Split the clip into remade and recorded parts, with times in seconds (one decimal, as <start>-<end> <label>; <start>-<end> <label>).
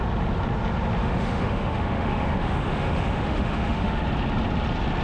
0.0-1.0 recorded; 1.0-4.0 remade; 4.0-5.0 recorded